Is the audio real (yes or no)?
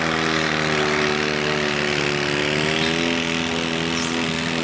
yes